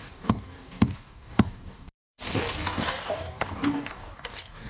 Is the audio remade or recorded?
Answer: remade